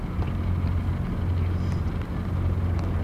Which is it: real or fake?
real